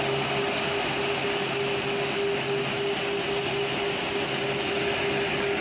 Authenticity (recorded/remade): recorded